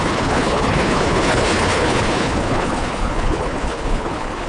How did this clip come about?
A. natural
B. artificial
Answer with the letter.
B